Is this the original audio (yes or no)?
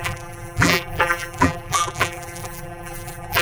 no